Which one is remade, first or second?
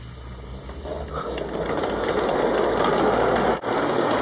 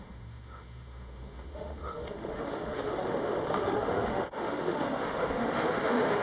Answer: second